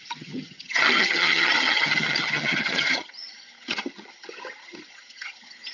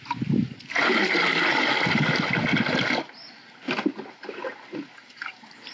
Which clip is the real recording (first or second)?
second